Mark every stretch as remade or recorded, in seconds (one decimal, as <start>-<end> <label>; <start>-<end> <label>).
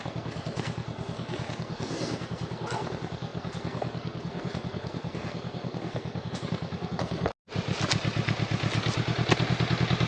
0.0-7.3 remade; 7.3-10.1 recorded